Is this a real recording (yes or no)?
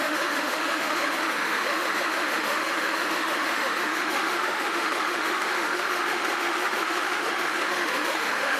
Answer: no